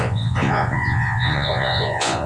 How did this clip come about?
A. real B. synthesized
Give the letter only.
B